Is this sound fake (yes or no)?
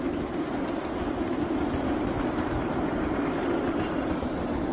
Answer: no